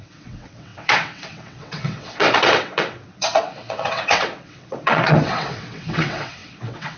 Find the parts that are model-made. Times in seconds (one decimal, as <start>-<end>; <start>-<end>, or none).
0.0-7.0